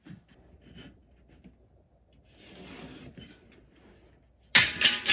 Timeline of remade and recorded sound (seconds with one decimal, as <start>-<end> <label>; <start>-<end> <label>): 0.0-5.1 recorded